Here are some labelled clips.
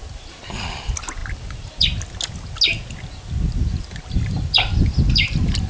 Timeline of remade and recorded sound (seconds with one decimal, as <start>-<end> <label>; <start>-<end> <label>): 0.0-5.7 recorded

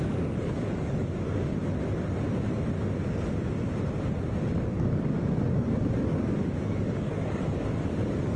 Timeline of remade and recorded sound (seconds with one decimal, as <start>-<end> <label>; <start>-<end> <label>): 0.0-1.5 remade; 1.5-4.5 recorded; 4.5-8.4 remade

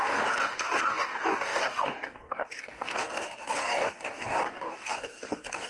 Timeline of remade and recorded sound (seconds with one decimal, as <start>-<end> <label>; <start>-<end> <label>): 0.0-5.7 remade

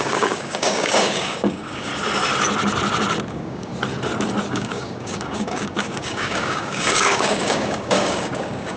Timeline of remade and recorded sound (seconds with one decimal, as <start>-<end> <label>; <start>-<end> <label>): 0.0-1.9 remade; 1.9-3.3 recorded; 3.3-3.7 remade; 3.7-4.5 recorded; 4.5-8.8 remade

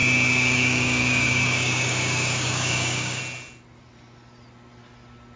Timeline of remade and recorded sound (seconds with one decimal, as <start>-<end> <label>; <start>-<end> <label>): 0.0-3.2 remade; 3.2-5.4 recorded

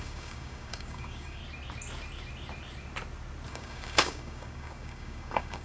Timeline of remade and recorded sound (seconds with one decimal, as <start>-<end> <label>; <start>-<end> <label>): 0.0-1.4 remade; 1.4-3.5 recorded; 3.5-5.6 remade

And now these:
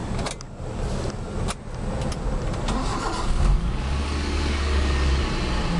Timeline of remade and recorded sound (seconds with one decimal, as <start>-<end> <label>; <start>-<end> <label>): 0.0-2.9 recorded; 2.9-5.2 remade; 5.2-5.8 recorded